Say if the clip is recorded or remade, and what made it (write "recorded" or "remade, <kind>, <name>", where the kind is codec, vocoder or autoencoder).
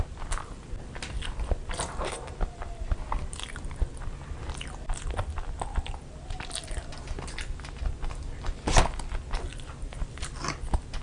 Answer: recorded